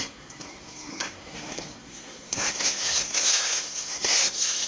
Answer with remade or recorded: remade